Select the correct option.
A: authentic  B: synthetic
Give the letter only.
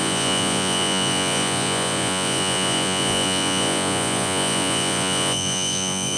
B